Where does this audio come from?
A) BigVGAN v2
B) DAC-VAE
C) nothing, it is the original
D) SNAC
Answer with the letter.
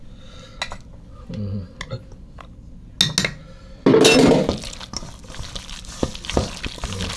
C